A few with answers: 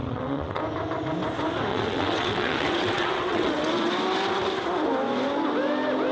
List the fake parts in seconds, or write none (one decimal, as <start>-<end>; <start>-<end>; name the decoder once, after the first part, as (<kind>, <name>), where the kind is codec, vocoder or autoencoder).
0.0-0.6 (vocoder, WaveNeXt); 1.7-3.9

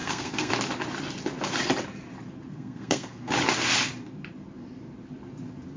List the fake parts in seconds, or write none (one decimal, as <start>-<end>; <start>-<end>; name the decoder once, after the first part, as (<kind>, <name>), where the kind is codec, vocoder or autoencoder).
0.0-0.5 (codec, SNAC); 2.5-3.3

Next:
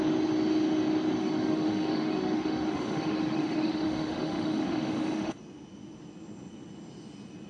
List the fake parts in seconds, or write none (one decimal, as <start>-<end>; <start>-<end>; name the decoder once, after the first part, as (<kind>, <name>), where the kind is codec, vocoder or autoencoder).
1.2-5.4 (autoencoder, DAC-VAE)

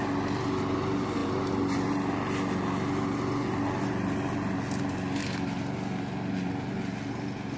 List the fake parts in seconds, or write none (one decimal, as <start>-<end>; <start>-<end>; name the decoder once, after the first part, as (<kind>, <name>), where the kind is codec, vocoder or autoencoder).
none

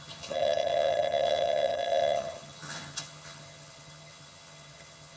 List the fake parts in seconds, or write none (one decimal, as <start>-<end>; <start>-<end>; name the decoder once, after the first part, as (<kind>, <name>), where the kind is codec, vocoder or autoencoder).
0.0-5.2 (vocoder, HiFi-GAN)

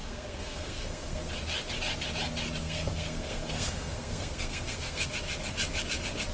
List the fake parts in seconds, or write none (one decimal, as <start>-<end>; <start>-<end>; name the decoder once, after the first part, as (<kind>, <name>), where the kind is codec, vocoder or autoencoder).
0.0-1.3 (codec, SNAC); 2.6-5.1

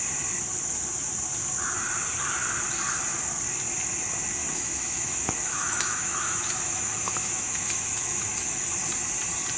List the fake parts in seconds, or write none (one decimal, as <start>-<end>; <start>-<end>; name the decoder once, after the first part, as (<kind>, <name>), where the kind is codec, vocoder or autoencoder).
4.4-8.7 (autoencoder, DAC-VAE)

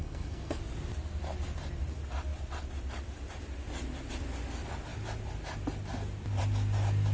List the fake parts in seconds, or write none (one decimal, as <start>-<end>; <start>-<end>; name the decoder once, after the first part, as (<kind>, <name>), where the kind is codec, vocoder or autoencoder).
0.0-0.6 (codec, SNAC)